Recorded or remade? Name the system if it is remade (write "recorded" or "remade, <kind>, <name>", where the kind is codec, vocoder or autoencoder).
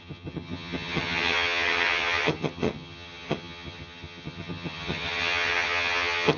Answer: remade, vocoder, HiFi-GAN